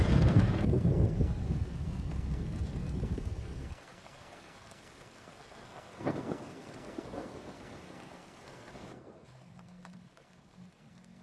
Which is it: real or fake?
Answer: fake